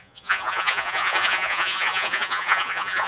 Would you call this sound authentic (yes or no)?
no